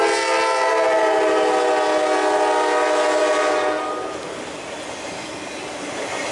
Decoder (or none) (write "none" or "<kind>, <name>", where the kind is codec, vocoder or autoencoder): none